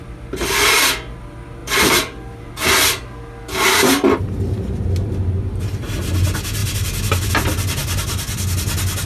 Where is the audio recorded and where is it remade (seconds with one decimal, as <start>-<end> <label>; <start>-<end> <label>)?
0.0-1.6 recorded; 1.6-2.5 remade; 2.5-9.1 recorded